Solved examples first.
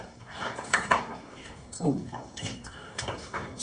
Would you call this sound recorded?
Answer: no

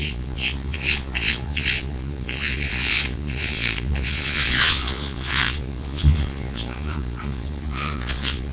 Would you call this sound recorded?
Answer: no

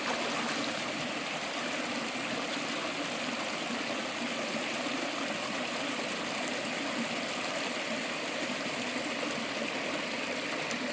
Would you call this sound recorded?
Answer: yes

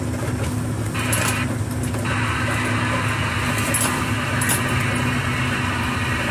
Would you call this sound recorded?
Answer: yes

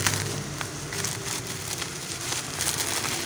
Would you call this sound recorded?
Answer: yes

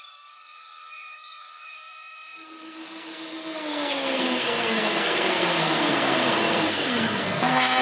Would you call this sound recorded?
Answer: no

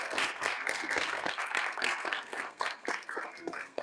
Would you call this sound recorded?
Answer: no